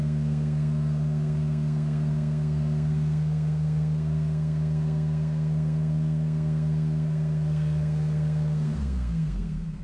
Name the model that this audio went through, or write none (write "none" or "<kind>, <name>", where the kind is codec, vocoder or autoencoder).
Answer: codec, SNAC